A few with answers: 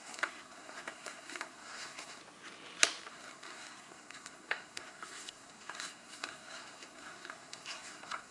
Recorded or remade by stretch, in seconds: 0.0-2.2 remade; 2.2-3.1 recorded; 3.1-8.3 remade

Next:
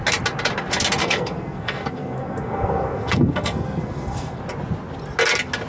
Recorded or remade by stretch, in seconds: 0.0-1.0 recorded; 1.0-4.4 remade; 4.4-5.7 recorded

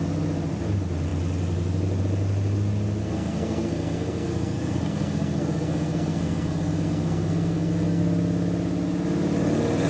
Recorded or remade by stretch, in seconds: 0.0-3.0 recorded; 3.0-8.0 remade; 8.0-9.9 recorded

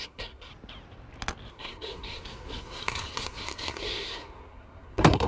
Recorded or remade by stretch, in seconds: 0.0-0.5 remade; 0.5-1.5 recorded; 1.5-5.3 remade

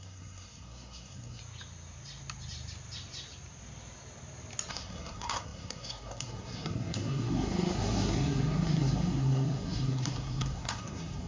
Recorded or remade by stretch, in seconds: 0.0-1.4 remade; 1.4-4.7 recorded; 4.7-11.3 remade

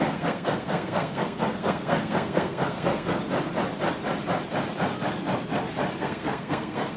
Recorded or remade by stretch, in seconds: 0.0-3.2 remade; 3.2-6.0 recorded; 6.0-7.0 remade

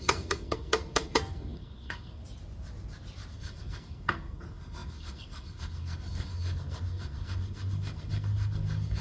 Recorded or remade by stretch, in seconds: 0.0-2.2 remade; 2.2-3.3 recorded; 3.3-9.0 remade